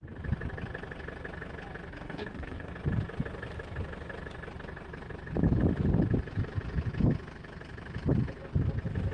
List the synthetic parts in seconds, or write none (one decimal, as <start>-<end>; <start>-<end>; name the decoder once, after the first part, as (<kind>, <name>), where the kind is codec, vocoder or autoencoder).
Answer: 1.9-2.7 (codec, SNAC)